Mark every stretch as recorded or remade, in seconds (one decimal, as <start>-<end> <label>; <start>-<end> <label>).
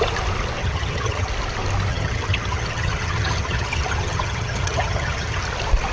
0.0-0.6 recorded; 0.6-1.3 remade; 1.3-1.9 recorded; 1.9-5.4 remade; 5.4-5.9 recorded